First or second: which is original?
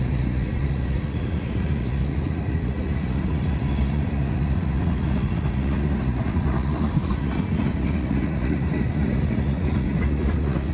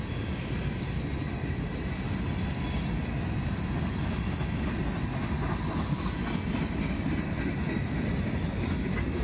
second